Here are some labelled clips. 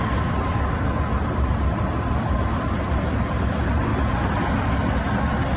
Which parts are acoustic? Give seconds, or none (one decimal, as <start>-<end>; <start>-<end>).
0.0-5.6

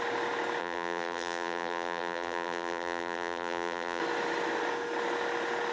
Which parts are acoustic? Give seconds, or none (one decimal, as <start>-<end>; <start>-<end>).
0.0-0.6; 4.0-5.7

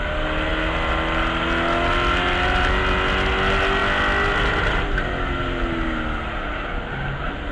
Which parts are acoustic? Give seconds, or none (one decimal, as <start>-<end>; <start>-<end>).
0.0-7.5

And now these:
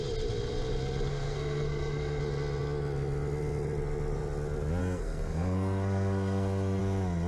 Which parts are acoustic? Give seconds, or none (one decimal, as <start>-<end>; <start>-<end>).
0.0-1.1; 2.2-4.8; 6.8-7.3

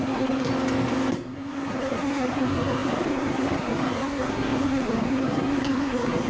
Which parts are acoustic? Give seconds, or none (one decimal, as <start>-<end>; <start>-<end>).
0.5-1.1

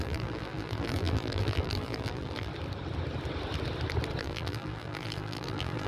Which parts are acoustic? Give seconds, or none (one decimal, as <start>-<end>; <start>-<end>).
2.5-4.2

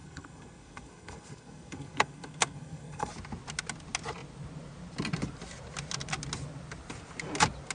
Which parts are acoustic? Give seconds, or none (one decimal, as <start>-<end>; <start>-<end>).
3.1-7.7